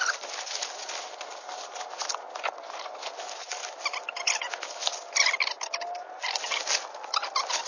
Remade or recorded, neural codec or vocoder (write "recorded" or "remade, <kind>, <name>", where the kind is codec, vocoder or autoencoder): recorded